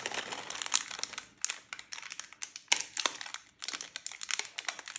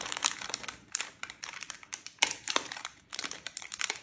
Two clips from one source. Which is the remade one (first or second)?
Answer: second